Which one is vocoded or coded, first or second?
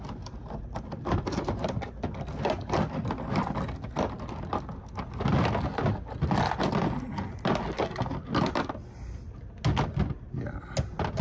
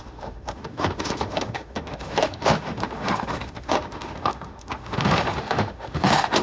second